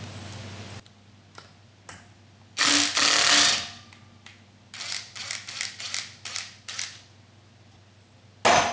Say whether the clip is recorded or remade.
recorded